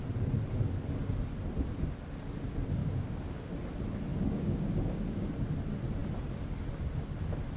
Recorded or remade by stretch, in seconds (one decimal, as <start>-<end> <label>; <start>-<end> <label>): 0.0-2.8 recorded; 2.8-3.5 remade; 3.5-4.1 recorded; 4.1-5.3 remade; 5.3-7.6 recorded